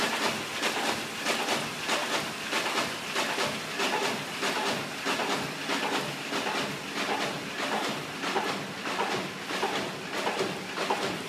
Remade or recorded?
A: recorded